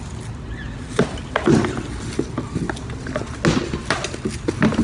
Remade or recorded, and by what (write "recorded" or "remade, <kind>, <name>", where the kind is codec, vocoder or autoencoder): recorded